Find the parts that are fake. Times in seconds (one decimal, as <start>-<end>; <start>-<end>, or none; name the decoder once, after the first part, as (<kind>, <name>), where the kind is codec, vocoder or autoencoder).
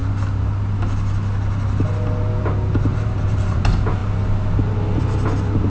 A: 2.9-3.6 (vocoder, BigVGAN v2)